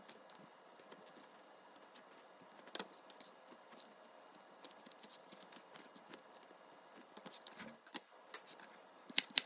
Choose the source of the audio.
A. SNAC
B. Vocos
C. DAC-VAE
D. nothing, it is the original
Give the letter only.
D